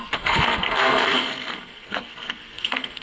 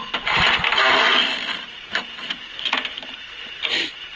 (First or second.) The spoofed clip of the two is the first